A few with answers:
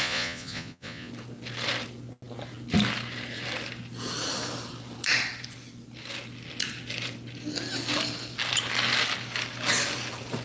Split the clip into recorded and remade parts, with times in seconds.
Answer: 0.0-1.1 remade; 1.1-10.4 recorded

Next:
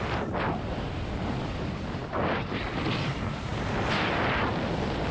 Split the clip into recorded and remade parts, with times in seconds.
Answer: 0.0-5.1 recorded

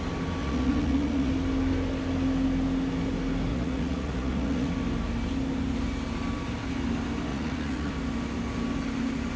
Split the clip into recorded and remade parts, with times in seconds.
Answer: 0.0-0.4 recorded; 0.4-1.3 remade; 1.3-3.5 recorded; 3.5-4.7 remade; 4.7-7.3 recorded; 7.3-7.9 remade; 7.9-9.4 recorded